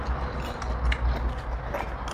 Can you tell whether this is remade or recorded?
recorded